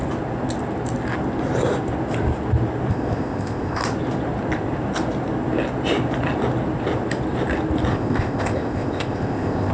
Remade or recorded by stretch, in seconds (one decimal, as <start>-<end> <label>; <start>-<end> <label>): 0.0-2.9 recorded; 2.9-3.8 remade; 3.8-7.9 recorded; 7.9-9.7 remade